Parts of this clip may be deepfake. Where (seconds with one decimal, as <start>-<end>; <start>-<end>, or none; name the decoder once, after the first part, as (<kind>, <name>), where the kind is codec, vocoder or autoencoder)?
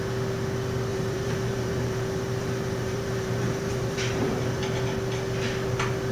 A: 0.9-4.6 (vocoder, BigVGAN v2)